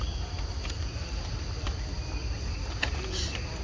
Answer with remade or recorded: recorded